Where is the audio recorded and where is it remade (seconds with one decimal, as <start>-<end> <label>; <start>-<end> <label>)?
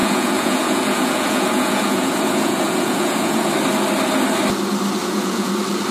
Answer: 0.0-3.5 remade; 3.5-5.0 recorded; 5.0-5.5 remade; 5.5-5.9 recorded